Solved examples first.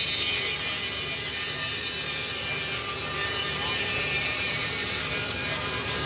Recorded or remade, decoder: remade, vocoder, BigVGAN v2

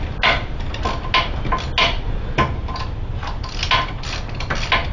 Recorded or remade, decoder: recorded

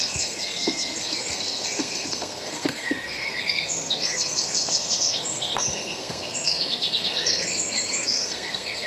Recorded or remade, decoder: remade, codec, SNAC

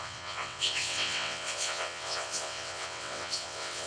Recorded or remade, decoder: remade, vocoder, WaveNeXt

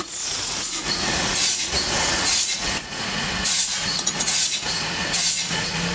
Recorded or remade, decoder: remade, vocoder, Vocos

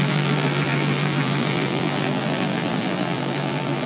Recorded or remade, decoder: remade, vocoder, BigVGAN v2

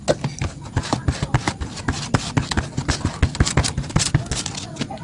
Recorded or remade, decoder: recorded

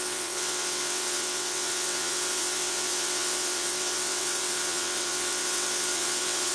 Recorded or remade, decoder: remade, vocoder, WaveNeXt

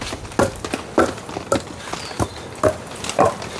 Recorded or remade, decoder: recorded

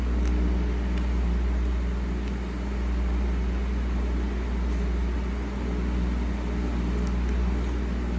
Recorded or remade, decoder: recorded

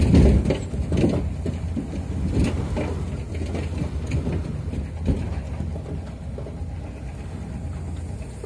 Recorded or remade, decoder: recorded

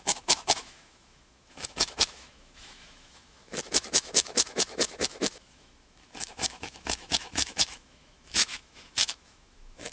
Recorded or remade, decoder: remade, autoencoder, DAC-VAE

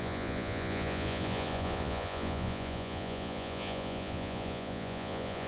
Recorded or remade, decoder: remade, vocoder, Vocos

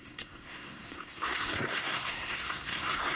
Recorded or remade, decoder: remade, codec, SNAC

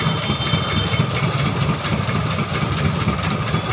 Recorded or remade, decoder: recorded